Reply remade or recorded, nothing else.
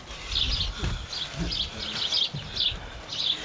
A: recorded